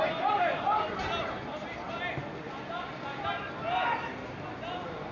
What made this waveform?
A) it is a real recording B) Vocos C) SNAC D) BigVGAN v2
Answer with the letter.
A